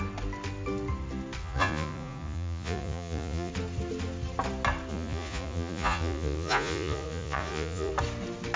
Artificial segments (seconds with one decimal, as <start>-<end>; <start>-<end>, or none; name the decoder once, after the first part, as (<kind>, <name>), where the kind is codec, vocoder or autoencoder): 1.4-3.5 (vocoder, Vocos); 4.9-7.9